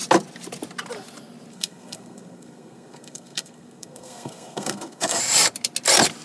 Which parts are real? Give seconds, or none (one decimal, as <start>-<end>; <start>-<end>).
0.0-1.5; 5.2-6.2